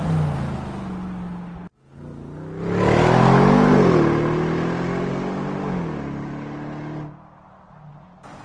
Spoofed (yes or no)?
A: no